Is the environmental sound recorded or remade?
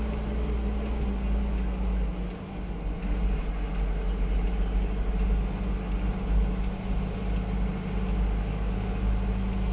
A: recorded